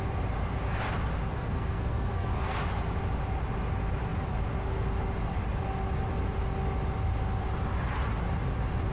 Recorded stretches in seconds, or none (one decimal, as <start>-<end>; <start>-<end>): 0.0-1.3; 2.6-8.9